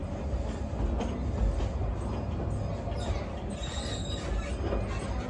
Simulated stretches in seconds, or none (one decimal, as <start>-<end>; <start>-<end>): none